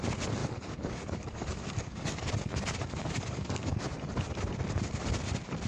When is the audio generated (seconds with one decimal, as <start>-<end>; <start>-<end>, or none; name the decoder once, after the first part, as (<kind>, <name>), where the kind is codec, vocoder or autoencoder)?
0.4-3.8 (codec, DAC)